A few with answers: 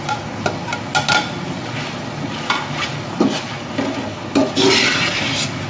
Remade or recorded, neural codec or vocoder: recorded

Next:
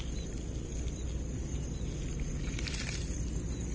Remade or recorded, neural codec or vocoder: recorded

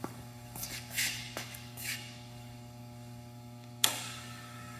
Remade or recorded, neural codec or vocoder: remade, codec, DAC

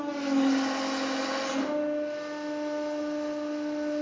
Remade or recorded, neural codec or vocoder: recorded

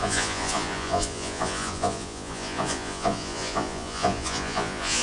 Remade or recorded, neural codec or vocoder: remade, vocoder, Vocos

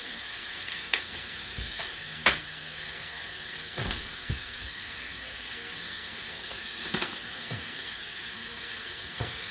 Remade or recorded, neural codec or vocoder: remade, codec, SNAC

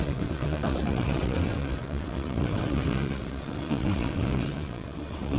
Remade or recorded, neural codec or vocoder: remade, vocoder, WaveNeXt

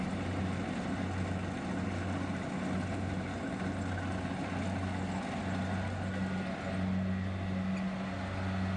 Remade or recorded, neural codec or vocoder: recorded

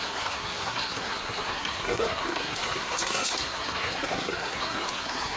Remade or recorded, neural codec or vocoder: remade, codec, SNAC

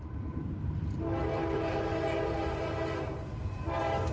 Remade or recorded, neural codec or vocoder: remade, vocoder, BigVGAN v2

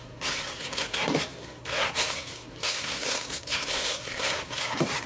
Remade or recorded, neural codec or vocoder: remade, codec, SNAC